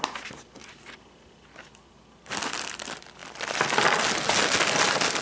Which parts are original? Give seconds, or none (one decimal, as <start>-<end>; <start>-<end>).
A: 0.0-3.2; 3.8-5.2